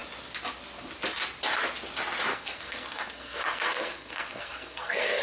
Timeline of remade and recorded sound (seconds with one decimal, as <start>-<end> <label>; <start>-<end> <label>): 0.0-2.3 recorded; 2.3-5.2 remade